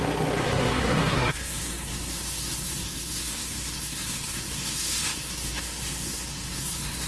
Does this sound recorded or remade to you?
remade